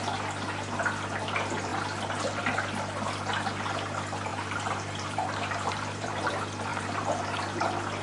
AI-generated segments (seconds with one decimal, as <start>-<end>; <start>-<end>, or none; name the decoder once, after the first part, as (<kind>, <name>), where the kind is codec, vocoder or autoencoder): 4.3-6.3 (vocoder, BigVGAN v2); 6.7-7.4

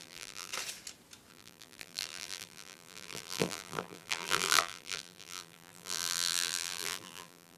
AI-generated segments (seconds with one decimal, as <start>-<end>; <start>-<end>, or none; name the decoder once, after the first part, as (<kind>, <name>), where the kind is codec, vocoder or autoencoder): 0.0-0.5 (vocoder, BigVGAN v2); 1.3-7.6

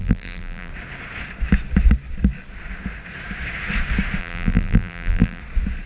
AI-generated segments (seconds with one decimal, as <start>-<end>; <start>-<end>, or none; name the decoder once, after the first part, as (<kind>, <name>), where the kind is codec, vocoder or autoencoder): 0.0-0.7 (vocoder, BigVGAN v2); 4.2-5.4

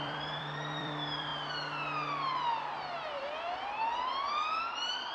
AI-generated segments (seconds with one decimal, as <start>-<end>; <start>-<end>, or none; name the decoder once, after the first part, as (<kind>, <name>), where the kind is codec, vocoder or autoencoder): 0.0-1.3 (vocoder, BigVGAN v2); 3.2-5.1

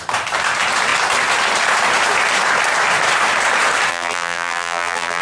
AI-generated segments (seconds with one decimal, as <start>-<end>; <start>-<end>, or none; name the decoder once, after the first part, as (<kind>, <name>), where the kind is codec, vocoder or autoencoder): 3.9-5.2 (vocoder, BigVGAN v2)

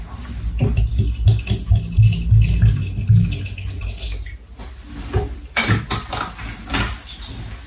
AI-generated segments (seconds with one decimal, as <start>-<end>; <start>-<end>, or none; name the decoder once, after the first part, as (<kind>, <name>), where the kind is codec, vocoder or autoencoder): 5.4-6.1 (vocoder, BigVGAN v2)

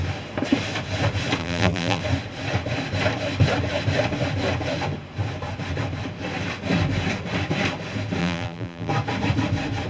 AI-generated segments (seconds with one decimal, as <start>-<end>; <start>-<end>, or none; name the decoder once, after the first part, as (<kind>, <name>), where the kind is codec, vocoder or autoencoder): 1.4-2.0 (vocoder, BigVGAN v2); 8.2-8.9

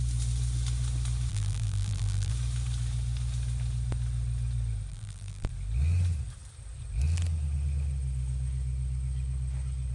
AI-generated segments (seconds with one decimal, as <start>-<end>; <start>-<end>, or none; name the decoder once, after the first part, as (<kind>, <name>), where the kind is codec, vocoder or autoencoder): 1.3-2.3 (vocoder, BigVGAN v2); 4.9-5.5